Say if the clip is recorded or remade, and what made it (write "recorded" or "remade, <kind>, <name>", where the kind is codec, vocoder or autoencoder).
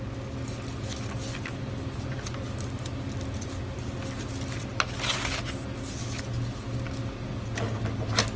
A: recorded